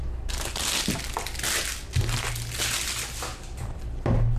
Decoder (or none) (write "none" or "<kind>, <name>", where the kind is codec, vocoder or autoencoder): none